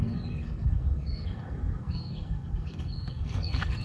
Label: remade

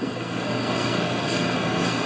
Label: remade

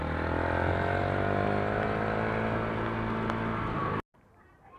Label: recorded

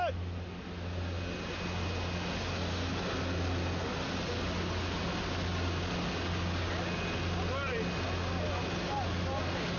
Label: recorded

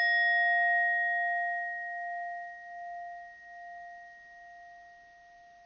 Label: recorded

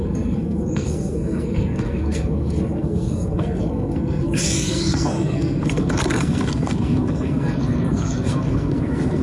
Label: remade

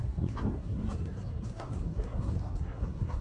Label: remade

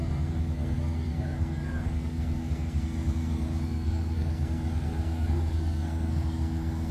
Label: remade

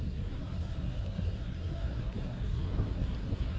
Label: remade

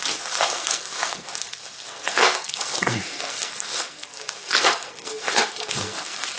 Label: remade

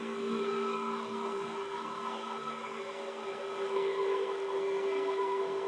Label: remade